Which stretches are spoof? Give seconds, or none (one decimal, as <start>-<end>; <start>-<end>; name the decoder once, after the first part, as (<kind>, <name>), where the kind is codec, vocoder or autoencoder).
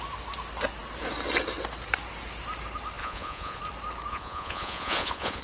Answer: 3.0-3.6 (vocoder, Vocos); 4.1-5.4